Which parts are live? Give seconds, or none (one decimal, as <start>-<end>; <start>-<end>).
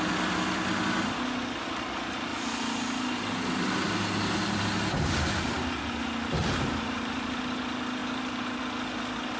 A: 0.0-6.4; 7.5-8.0; 8.6-9.4